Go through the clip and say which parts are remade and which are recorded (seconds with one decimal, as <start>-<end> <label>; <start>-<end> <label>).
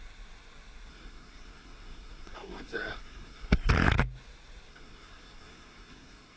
0.0-0.9 recorded; 0.9-3.7 remade; 3.7-4.7 recorded; 4.7-6.4 remade